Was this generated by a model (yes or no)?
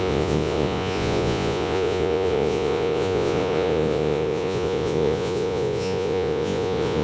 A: yes